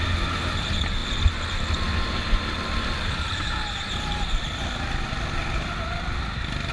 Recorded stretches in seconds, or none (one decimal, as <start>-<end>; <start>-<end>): 0.0-6.7